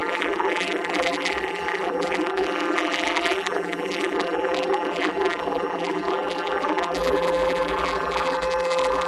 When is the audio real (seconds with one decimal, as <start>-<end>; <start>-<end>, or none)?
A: none